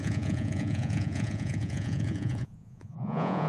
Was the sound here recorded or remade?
remade